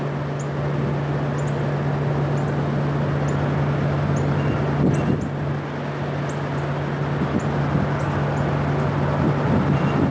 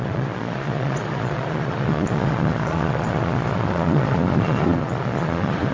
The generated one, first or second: second